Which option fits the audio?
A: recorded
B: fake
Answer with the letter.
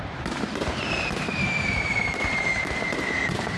B